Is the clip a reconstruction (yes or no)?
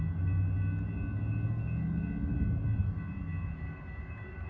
no